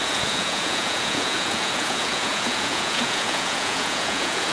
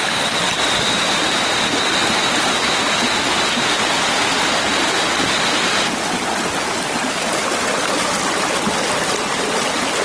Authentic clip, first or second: second